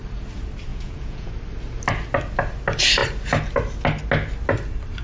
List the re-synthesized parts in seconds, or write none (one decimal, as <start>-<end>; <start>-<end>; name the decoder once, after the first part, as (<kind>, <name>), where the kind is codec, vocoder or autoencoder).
0.7-1.3 (vocoder, Vocos)